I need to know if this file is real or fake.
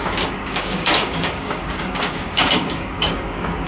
fake